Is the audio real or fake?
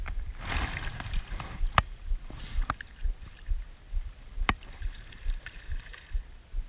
fake